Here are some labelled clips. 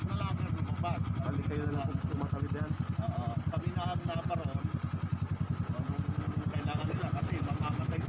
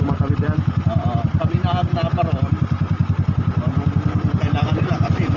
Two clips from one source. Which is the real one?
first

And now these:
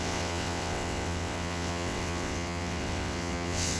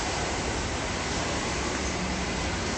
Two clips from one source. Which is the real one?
second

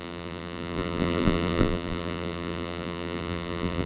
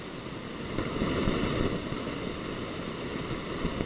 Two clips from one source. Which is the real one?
second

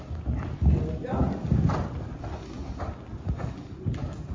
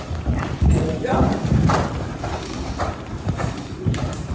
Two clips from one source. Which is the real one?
first